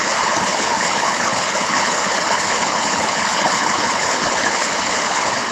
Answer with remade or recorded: remade